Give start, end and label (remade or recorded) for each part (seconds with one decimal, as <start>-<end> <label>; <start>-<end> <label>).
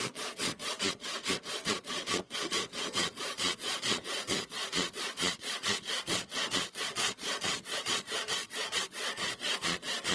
0.0-1.0 remade; 1.0-1.5 recorded; 1.5-10.1 remade